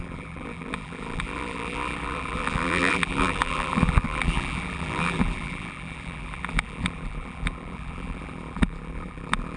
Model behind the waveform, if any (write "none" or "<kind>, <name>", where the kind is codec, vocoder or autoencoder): vocoder, BigVGAN v2